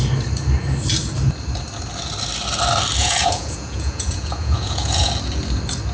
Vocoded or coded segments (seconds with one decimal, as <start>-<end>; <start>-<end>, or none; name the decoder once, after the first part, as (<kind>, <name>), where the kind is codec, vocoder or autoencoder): 3.0-5.1 (vocoder, Vocos)